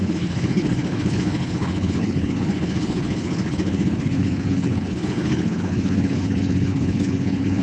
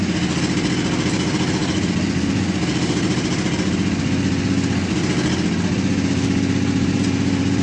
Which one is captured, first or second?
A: second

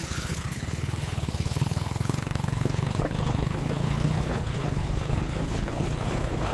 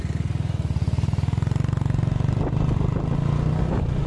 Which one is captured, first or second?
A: second